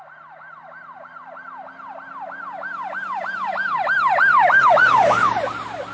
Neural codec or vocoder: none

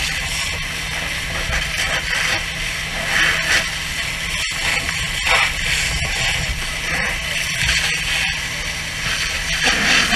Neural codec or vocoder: none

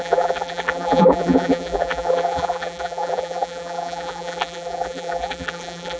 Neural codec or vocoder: vocoder, BigVGAN v2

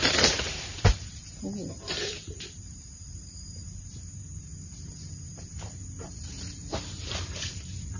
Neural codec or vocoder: vocoder, BigVGAN v2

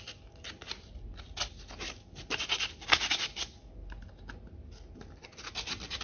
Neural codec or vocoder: none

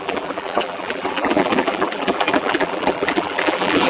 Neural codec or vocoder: vocoder, BigVGAN v2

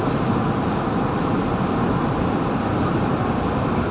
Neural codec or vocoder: vocoder, BigVGAN v2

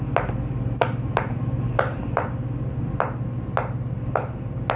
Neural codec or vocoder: none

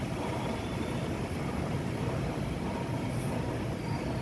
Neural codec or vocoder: vocoder, BigVGAN v2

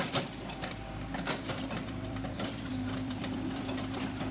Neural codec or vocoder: vocoder, BigVGAN v2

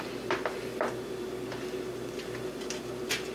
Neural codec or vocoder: none